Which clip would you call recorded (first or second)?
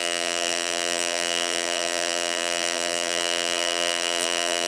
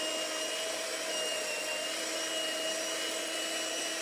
second